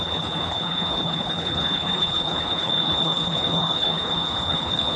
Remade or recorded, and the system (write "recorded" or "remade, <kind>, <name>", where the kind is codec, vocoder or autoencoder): remade, codec, HILCodec